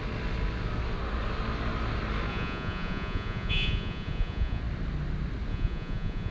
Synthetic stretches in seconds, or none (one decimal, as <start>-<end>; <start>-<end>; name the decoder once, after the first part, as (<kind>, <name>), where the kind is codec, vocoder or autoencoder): 2.3-4.6 (vocoder, Vocos); 5.5-6.3